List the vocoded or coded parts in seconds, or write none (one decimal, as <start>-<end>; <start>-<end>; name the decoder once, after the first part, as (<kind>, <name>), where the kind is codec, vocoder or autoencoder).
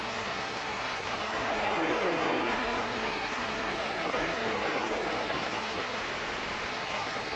0.0-6.0 (codec, SNAC); 6.7-7.4